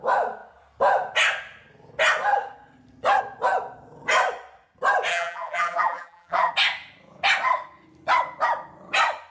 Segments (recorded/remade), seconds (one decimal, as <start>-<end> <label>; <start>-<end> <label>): 0.0-5.1 recorded; 5.1-6.5 remade; 6.5-9.3 recorded